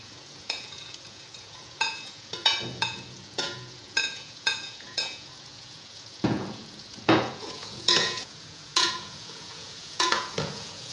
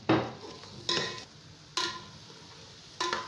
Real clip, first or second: second